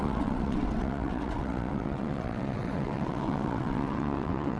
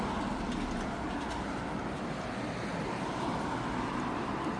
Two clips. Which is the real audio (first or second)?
second